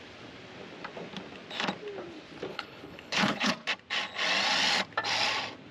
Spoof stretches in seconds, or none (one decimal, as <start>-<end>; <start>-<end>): 2.5-3.5